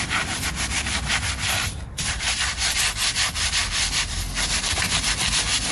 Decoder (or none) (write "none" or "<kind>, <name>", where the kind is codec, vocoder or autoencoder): vocoder, BigVGAN v2